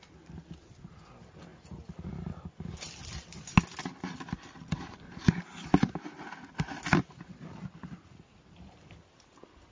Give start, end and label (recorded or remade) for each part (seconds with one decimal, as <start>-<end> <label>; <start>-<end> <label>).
0.0-9.7 recorded